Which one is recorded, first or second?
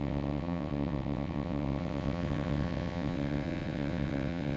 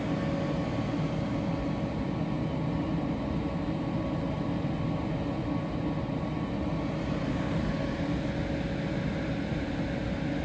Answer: second